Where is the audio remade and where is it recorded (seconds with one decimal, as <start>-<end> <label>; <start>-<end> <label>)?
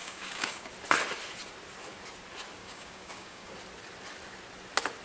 0.0-0.7 remade; 0.7-2.6 recorded; 2.6-3.5 remade; 3.5-5.0 recorded